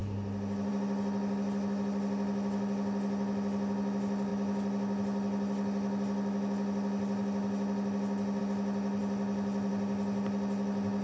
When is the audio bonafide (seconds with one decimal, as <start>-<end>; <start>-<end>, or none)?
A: 0.0-11.0